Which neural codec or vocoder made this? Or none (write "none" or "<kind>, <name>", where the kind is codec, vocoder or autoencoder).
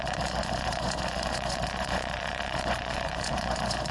vocoder, Vocos